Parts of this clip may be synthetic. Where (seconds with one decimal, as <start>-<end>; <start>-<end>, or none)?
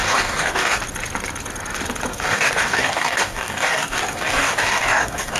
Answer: 0.0-0.8; 2.1-5.4